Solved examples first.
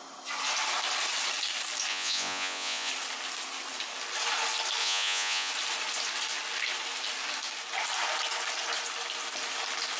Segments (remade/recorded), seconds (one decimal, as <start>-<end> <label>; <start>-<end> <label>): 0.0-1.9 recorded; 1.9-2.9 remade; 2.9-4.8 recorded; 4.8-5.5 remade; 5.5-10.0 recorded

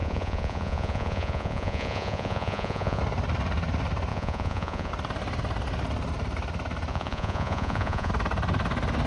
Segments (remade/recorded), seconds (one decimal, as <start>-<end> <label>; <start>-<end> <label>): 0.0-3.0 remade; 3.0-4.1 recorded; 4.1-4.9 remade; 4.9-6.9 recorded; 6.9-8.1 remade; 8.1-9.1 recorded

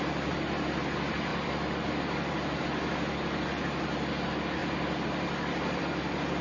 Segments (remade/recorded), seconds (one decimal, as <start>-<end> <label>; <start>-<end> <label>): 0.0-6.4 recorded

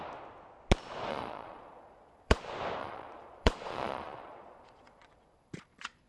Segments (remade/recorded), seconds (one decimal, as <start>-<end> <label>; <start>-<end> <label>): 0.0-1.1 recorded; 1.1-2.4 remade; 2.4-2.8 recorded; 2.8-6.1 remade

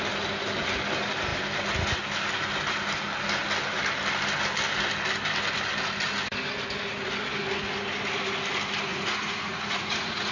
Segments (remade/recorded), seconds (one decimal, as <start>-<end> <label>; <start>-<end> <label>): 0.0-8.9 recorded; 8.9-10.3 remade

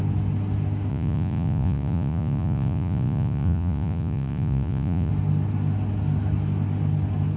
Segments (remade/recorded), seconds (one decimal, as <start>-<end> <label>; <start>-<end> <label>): 0.0-0.9 recorded; 0.9-5.1 remade; 5.1-7.4 recorded

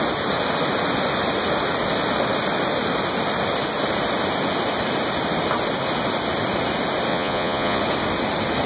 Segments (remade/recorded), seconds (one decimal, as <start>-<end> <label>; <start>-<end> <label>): 0.0-7.1 recorded; 7.1-7.8 remade; 7.8-8.7 recorded